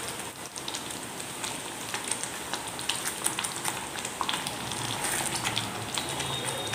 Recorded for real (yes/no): yes